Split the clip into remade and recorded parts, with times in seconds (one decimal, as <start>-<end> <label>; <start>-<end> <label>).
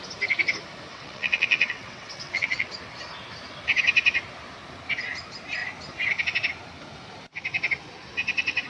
0.0-0.9 recorded; 0.9-2.7 remade; 2.7-8.7 recorded